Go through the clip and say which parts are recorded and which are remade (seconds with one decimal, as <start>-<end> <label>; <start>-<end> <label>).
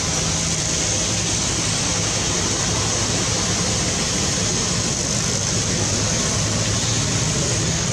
0.0-7.9 recorded